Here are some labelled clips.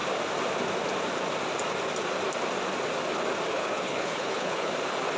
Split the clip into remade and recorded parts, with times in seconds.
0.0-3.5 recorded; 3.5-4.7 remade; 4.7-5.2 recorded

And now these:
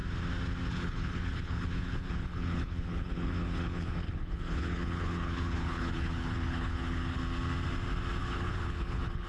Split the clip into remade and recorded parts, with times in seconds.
0.0-0.7 recorded; 0.7-7.2 remade; 7.2-8.2 recorded; 8.2-9.3 remade

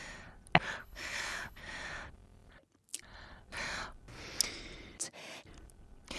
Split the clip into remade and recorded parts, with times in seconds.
0.0-0.8 recorded; 0.8-1.6 remade; 1.6-6.2 recorded

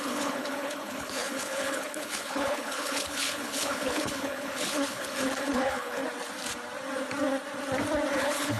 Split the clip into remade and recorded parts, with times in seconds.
0.0-6.0 remade; 6.0-8.1 recorded; 8.1-8.6 remade

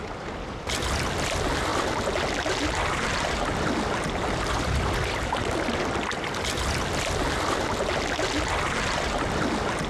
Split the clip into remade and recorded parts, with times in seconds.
0.0-9.9 recorded

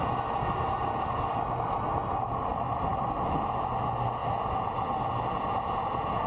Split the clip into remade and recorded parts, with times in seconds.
0.0-6.3 recorded

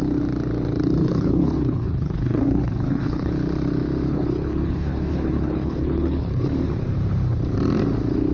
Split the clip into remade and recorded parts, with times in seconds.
0.0-1.0 recorded; 1.0-3.3 remade; 3.3-4.1 recorded; 4.1-6.5 remade; 6.5-8.3 recorded

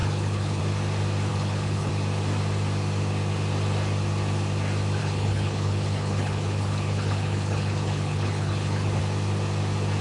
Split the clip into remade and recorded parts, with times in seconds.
0.0-0.6 remade; 0.6-1.3 recorded; 1.3-1.9 remade; 1.9-5.0 recorded; 5.0-9.0 remade; 9.0-10.0 recorded